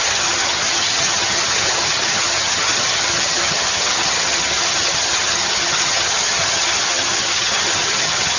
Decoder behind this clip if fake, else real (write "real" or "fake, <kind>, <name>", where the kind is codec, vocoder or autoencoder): fake, vocoder, HiFi-GAN